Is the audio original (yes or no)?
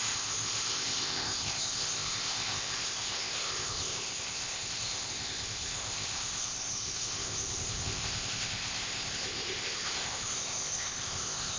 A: no